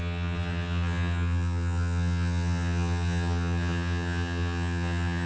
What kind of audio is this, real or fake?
fake